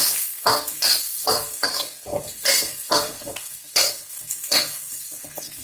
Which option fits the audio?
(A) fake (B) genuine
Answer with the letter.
A